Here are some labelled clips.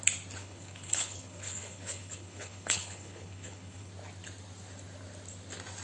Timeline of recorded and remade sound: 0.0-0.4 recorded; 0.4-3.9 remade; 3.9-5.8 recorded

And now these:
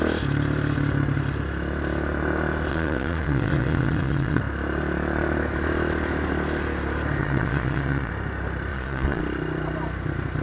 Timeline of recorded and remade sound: 0.0-2.7 recorded; 2.7-4.4 remade; 4.4-7.2 recorded; 7.2-8.1 remade; 8.1-8.7 recorded; 8.7-9.2 remade; 9.2-10.4 recorded

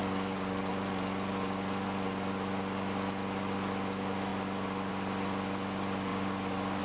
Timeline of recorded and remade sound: 0.0-0.7 remade; 0.7-6.8 recorded

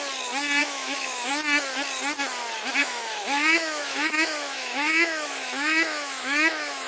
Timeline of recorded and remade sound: 0.0-0.6 recorded; 0.6-1.3 remade; 1.3-2.8 recorded; 2.8-6.9 remade

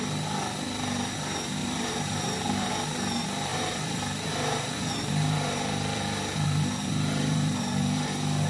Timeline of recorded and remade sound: 0.0-1.6 recorded; 1.6-2.7 remade; 2.7-3.5 recorded; 3.5-8.1 remade; 8.1-8.5 recorded

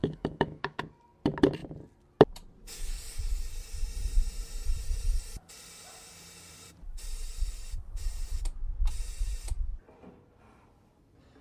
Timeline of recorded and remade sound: 0.0-0.8 remade; 0.8-11.4 recorded

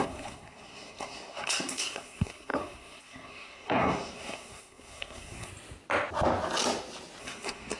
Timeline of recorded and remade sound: 0.0-5.5 remade; 5.5-7.2 recorded; 7.2-7.8 remade